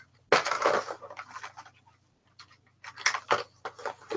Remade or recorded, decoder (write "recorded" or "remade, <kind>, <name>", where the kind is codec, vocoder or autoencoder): recorded